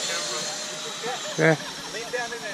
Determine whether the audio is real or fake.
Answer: fake